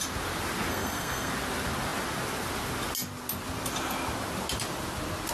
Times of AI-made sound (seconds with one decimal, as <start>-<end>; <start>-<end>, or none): 0.7-1.3